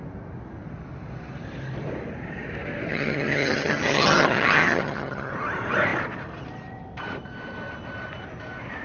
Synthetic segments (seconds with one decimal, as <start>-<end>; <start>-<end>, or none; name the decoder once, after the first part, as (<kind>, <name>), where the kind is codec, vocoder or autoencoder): 2.9-5.3 (vocoder, HiFi-GAN)